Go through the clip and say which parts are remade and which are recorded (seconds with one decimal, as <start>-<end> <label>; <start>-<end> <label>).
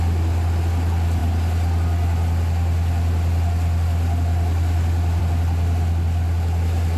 0.0-7.0 recorded